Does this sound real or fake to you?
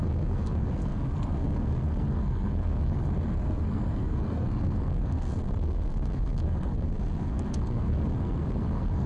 fake